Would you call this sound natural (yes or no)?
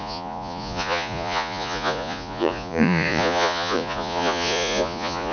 no